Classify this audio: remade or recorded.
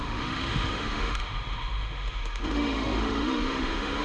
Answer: remade